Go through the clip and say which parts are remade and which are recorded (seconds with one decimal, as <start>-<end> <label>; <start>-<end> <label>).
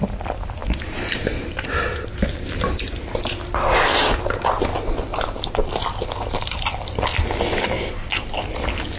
0.0-9.0 recorded